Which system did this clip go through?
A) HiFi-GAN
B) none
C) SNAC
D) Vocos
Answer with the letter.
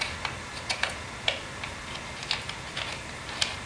B